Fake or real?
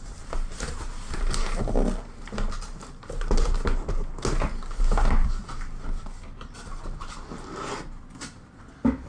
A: real